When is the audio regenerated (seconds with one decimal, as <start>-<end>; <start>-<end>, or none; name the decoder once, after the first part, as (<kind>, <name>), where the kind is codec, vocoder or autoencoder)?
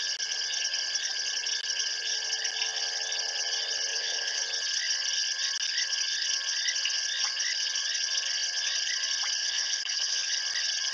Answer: 3.9-4.4 (codec, HILCodec); 9.4-10.3